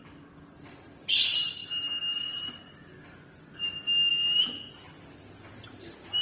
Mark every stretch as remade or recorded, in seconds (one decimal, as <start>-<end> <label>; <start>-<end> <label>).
0.0-4.1 recorded; 4.1-4.7 remade; 4.7-6.2 recorded